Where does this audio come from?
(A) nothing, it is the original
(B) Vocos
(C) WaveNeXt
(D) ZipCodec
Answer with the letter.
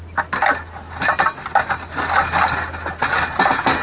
A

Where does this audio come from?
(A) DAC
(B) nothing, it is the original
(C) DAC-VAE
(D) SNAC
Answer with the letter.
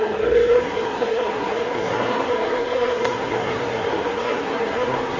D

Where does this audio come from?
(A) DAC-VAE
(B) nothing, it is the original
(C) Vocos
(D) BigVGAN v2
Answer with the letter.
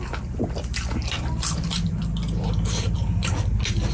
D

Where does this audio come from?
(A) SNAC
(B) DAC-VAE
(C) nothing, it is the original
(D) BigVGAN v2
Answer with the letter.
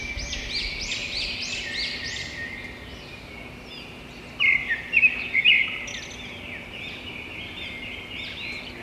C